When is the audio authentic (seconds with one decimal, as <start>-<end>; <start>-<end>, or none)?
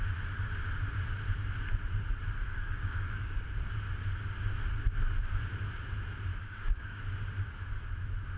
0.0-2.5; 3.4-6.3; 7.0-8.4